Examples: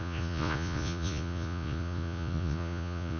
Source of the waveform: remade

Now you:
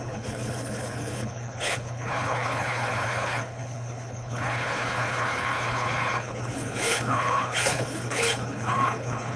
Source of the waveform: remade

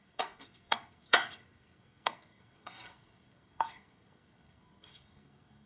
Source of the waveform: remade